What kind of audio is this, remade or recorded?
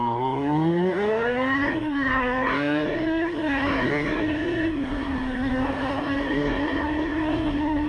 remade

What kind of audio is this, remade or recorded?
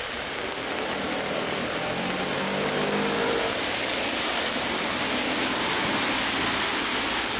recorded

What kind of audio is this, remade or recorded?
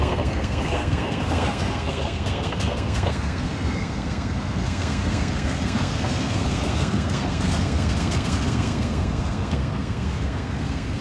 remade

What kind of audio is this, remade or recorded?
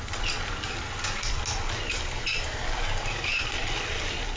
recorded